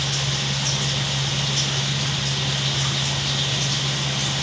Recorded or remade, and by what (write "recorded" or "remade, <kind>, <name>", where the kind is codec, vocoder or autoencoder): recorded